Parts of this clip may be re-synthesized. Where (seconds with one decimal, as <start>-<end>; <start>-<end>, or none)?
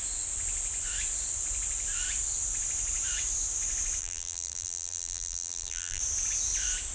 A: 4.0-6.0